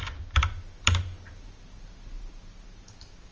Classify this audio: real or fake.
real